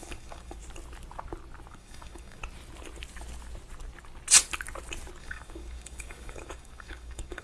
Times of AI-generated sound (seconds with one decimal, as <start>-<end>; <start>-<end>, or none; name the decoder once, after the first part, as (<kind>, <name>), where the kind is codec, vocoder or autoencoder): 0.0-0.6 (codec, DAC); 1.7-2.4; 5.2-7.4